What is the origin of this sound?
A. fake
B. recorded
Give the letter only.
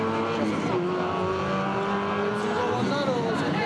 B